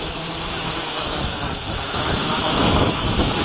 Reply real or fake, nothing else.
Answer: fake